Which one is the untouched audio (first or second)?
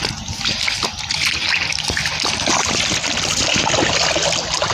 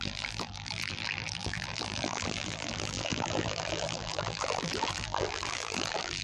first